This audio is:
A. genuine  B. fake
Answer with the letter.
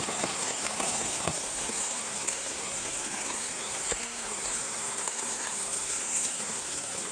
B